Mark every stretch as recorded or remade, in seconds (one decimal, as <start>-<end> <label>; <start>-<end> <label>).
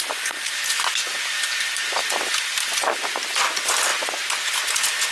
0.0-5.1 recorded